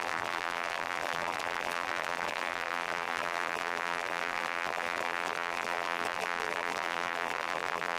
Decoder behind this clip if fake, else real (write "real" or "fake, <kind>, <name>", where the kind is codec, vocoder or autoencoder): fake, vocoder, BigVGAN v2